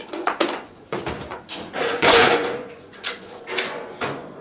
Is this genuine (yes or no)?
no